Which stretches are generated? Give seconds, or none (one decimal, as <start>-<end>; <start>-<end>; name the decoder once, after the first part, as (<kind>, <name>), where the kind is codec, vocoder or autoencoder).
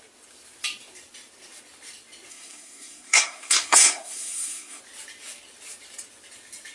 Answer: 2.3-4.8 (codec, SNAC)